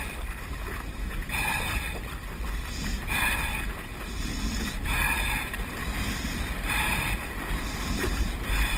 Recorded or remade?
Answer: recorded